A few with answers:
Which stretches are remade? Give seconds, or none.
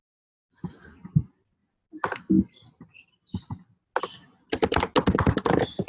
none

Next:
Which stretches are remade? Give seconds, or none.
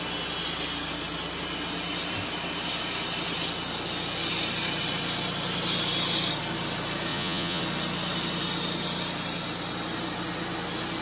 7.1-7.6 (vocoder, Vocos)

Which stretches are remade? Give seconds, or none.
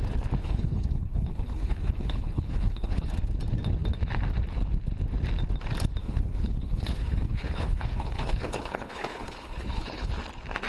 0.4-3.1 (codec, HILCodec); 6.0-10.1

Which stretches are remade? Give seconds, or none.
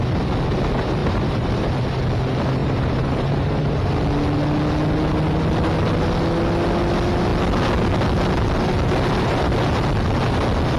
1.0-1.7 (vocoder, BigVGAN v2); 2.6-3.9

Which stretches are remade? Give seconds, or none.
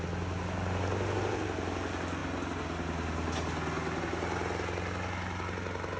none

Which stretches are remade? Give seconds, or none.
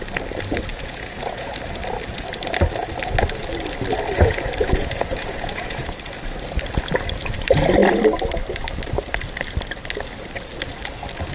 0.7-1.5 (vocoder, Vocos); 4.6-5.8